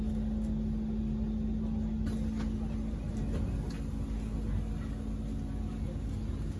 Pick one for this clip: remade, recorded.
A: recorded